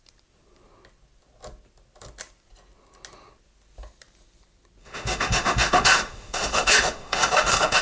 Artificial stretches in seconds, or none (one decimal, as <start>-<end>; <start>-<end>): 4.8-7.8